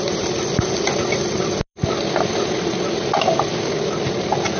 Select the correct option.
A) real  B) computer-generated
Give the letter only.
A